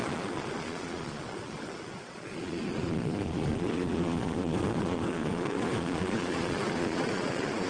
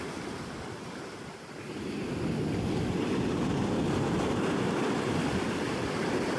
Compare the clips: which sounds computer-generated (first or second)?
first